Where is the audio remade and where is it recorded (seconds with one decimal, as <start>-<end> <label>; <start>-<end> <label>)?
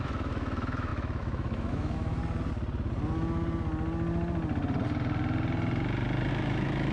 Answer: 0.0-2.2 remade; 2.2-6.3 recorded; 6.3-6.9 remade